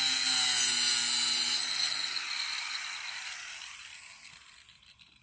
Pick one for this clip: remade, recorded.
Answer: recorded